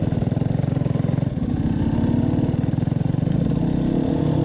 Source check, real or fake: real